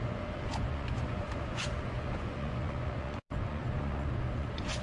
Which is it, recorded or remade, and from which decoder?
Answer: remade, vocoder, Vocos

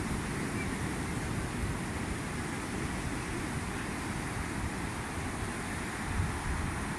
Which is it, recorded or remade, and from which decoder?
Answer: recorded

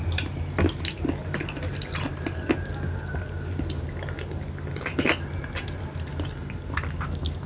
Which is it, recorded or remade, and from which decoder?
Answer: recorded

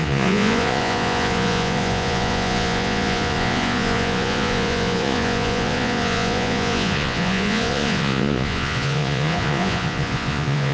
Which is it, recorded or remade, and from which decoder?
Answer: remade, vocoder, Vocos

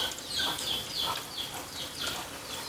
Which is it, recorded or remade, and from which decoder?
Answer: recorded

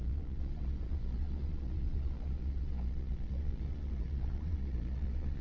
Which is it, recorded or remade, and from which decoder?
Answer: remade, vocoder, Vocos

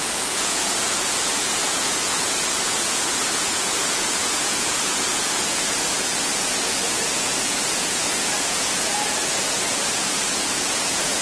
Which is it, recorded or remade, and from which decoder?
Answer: remade, vocoder, Vocos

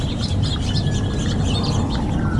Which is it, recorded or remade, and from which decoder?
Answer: recorded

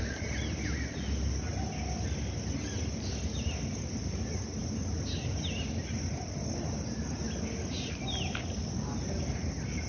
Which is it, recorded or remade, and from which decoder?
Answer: recorded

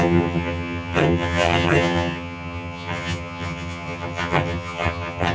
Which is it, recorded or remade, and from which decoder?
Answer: remade, vocoder, HiFi-GAN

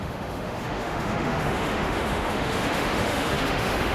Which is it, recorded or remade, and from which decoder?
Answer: remade, autoencoder, DAC-VAE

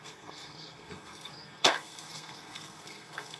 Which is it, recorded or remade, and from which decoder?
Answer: remade, codec, SNAC